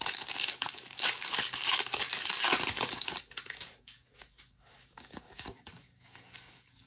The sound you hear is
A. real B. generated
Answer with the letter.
B